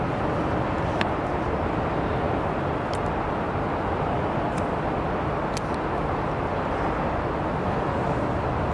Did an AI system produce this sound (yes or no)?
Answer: no